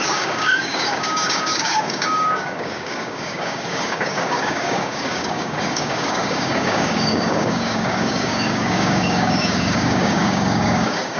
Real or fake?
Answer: fake